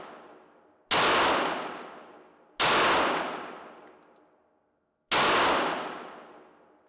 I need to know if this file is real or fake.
real